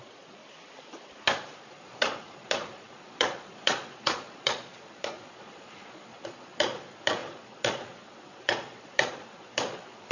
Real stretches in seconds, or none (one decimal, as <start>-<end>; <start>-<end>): 0.4-1.7